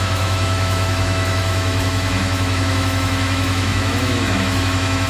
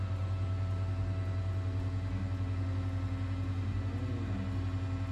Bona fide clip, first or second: second